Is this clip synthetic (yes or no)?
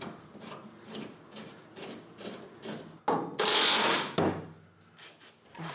no